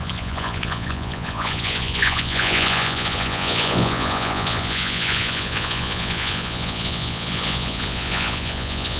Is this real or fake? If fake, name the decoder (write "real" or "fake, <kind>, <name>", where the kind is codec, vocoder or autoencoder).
fake, vocoder, Vocos